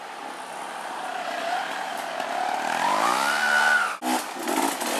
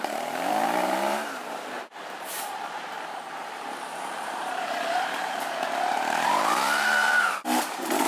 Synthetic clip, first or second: second